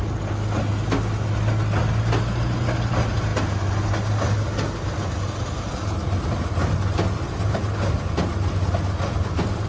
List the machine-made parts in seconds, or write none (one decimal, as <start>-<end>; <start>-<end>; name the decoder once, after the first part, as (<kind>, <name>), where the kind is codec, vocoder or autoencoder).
none